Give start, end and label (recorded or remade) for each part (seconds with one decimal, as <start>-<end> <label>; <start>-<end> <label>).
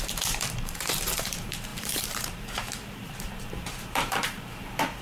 0.0-5.0 remade